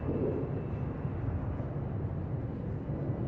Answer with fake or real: real